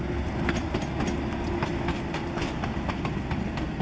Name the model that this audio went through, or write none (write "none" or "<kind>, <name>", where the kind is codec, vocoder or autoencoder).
none